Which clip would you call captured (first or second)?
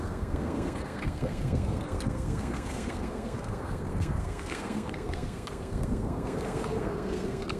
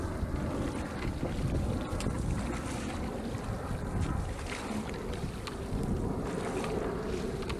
second